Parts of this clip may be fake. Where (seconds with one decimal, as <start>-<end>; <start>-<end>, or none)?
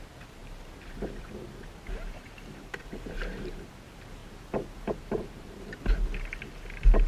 0.4-3.7; 4.2-5.8